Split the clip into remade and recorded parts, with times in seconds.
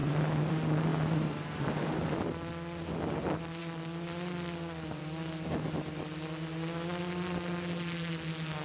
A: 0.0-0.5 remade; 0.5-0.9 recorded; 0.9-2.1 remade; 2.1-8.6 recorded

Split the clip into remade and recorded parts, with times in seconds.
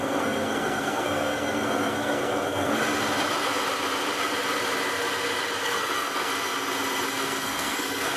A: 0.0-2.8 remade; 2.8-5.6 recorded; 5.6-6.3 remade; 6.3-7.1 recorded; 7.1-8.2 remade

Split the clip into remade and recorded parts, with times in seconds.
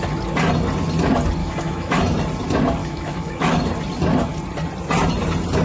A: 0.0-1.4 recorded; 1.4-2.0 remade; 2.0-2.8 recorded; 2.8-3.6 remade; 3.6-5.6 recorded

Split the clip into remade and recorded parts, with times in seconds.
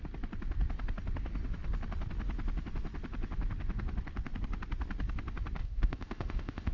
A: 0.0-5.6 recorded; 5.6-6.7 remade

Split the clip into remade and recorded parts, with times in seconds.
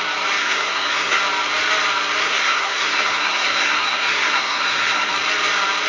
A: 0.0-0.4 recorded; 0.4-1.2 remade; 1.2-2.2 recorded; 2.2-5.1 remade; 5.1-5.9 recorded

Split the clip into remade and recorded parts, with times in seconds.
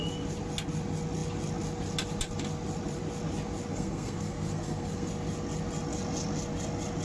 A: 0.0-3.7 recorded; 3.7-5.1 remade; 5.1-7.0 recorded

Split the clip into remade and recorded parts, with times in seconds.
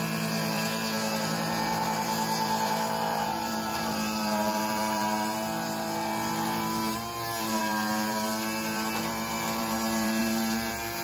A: 0.0-11.0 remade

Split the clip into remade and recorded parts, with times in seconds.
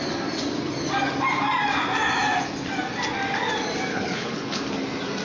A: 0.0-3.9 recorded; 3.9-4.6 remade; 4.6-5.2 recorded